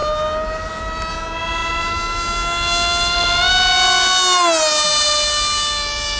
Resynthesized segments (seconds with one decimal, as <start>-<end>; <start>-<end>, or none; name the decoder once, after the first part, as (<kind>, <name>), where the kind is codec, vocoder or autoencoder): none

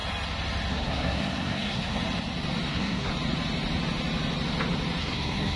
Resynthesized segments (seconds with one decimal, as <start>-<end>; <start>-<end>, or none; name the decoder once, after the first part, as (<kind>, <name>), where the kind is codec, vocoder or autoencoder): 0.7-2.0 (codec, SNAC); 2.7-3.1; 5.0-5.6

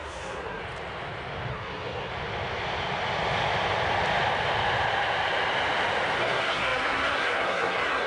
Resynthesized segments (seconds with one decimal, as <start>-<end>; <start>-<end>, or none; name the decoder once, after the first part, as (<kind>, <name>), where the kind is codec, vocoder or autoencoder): 0.0-0.6 (codec, SNAC); 1.5-2.1; 6.2-8.1

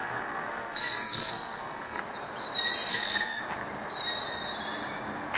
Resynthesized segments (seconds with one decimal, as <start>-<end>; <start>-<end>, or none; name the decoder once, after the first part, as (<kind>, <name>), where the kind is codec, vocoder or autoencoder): 0.0-2.0 (codec, SNAC); 2.9-3.4

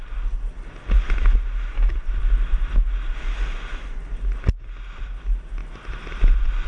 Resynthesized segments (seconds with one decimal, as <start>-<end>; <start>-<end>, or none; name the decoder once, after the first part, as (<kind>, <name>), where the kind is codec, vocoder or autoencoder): none

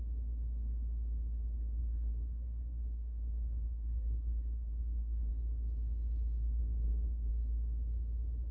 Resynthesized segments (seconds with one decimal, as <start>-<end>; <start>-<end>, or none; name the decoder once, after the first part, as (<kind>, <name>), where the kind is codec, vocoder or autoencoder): 1.8-5.3 (codec, SNAC); 6.6-7.3